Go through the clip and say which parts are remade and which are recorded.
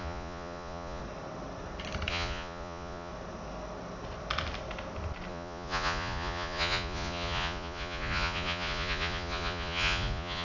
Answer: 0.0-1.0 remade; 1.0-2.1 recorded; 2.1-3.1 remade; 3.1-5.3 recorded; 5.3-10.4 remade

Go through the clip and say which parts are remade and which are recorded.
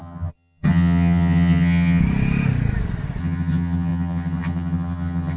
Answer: 0.0-2.0 remade; 2.0-3.2 recorded; 3.2-5.4 remade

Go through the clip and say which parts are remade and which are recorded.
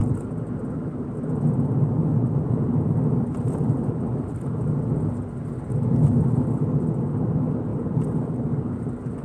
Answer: 0.0-2.1 recorded; 2.1-4.6 remade; 4.6-9.2 recorded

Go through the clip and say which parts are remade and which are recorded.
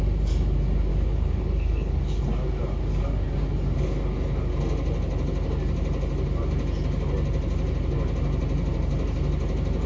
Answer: 0.0-0.9 recorded; 0.9-2.2 remade; 2.2-9.9 recorded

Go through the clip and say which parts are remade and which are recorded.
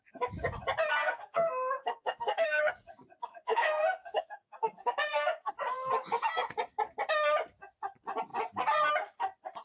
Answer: 0.0-1.0 recorded; 1.0-2.7 remade; 2.7-3.3 recorded; 3.3-5.5 remade; 5.5-9.6 recorded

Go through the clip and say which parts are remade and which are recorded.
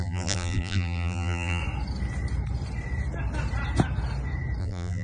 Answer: 0.0-1.6 remade; 1.6-4.6 recorded; 4.6-5.0 remade